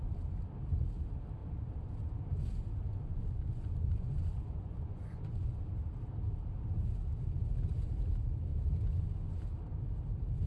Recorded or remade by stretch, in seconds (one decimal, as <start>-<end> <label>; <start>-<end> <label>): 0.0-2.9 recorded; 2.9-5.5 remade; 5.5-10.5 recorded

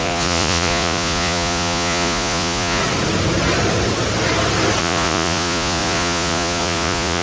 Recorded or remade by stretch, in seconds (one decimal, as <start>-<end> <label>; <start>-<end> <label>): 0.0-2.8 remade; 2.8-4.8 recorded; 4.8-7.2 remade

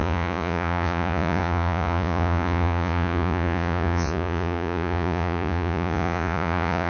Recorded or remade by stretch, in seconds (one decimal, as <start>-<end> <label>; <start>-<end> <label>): 0.0-6.9 remade